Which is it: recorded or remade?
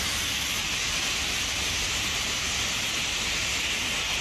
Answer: recorded